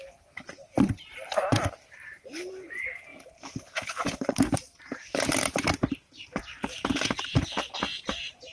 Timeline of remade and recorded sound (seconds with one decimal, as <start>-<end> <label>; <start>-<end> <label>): 0.0-8.5 remade